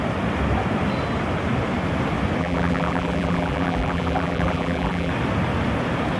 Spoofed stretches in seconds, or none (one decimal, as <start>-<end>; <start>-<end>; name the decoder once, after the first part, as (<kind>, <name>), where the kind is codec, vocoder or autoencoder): 2.4-5.1 (vocoder, BigVGAN v2)